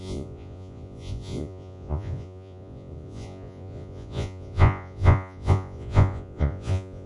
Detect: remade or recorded remade